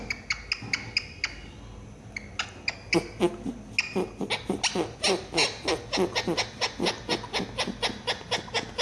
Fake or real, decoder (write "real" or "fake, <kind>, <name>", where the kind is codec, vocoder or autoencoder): real